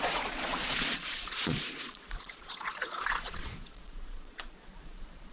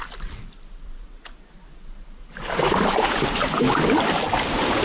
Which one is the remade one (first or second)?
first